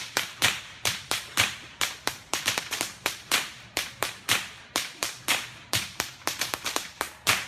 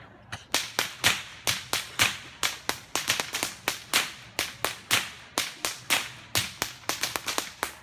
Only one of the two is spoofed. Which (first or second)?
first